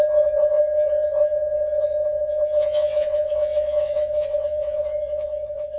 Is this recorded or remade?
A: remade